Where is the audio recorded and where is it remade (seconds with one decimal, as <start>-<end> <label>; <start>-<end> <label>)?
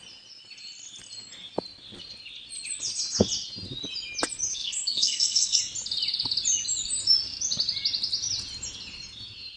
0.0-4.5 recorded; 4.5-5.6 remade; 5.6-9.6 recorded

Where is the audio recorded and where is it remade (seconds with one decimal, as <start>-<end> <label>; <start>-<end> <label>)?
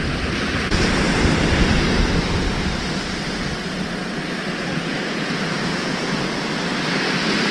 0.0-4.6 recorded; 4.6-6.2 remade; 6.2-7.5 recorded